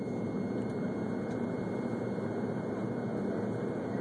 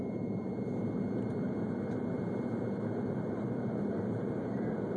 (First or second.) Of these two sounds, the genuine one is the first